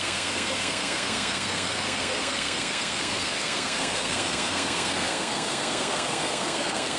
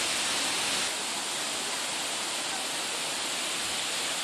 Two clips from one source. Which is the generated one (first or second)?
first